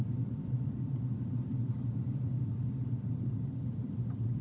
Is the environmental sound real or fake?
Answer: real